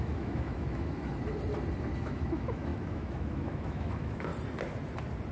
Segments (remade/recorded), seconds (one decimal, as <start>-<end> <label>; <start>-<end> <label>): 0.0-1.1 remade; 1.1-2.1 recorded; 2.1-4.3 remade; 4.3-5.3 recorded

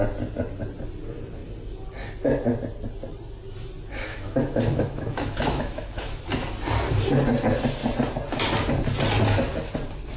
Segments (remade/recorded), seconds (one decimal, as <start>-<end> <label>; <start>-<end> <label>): 0.0-4.1 recorded; 4.1-6.2 remade; 6.2-10.2 recorded

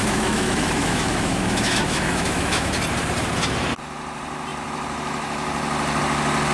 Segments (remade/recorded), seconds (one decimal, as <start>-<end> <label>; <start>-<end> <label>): 0.0-2.7 remade; 2.7-6.5 recorded

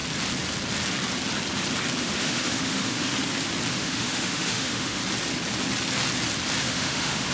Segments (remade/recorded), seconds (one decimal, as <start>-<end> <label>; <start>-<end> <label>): 0.0-2.0 recorded; 2.0-3.1 remade; 3.1-3.7 recorded; 3.7-5.0 remade; 5.0-6.6 recorded; 6.6-7.3 remade

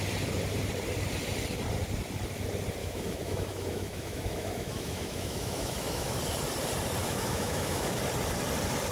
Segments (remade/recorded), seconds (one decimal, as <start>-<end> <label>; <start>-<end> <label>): 0.0-2.8 recorded; 2.8-6.2 remade; 6.2-7.0 recorded; 7.0-8.0 remade; 8.0-8.9 recorded

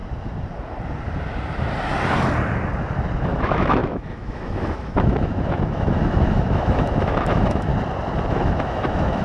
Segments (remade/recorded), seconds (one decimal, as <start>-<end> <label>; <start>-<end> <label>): 0.0-3.2 recorded; 3.2-7.7 remade; 7.7-8.3 recorded; 8.3-9.2 remade